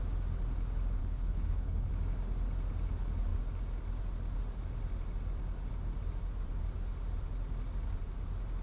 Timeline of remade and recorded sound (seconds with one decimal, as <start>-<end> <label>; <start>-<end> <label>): 0.0-1.0 recorded; 1.0-1.9 remade; 1.9-8.6 recorded